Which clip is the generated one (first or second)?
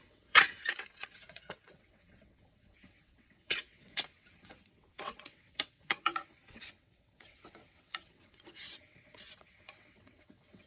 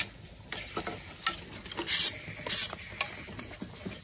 first